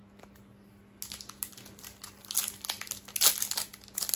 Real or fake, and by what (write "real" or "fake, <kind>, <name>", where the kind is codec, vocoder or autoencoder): real